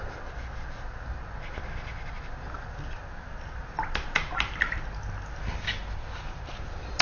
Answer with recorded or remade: recorded